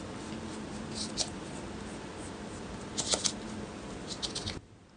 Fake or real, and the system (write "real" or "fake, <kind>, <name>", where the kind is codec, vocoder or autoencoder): real